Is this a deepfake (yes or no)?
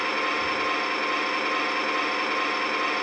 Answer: no